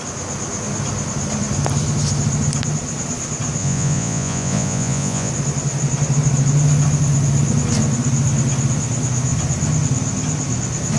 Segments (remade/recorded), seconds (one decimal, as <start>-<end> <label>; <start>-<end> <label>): 0.0-3.6 recorded; 3.6-5.3 remade; 5.3-11.0 recorded